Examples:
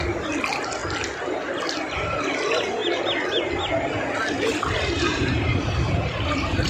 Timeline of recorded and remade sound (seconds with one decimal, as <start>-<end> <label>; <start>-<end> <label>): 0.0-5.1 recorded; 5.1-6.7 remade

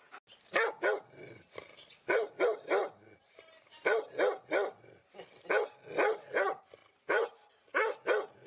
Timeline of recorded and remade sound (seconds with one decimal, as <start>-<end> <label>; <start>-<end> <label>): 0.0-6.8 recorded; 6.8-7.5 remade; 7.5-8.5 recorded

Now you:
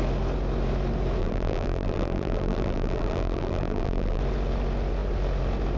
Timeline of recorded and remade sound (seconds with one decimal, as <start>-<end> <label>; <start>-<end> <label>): 0.0-1.2 recorded; 1.2-4.2 remade; 4.2-5.8 recorded

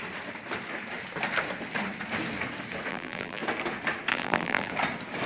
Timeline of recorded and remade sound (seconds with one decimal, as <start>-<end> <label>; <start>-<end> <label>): 0.0-2.9 recorded; 2.9-3.4 remade; 3.4-4.1 recorded; 4.1-4.7 remade; 4.7-5.3 recorded

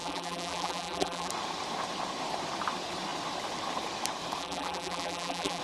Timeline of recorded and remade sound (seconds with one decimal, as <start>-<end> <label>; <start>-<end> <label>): 0.0-1.3 remade; 1.3-4.4 recorded; 4.4-5.6 remade